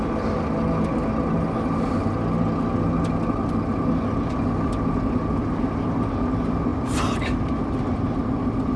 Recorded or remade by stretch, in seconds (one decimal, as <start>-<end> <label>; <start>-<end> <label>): 0.0-8.8 recorded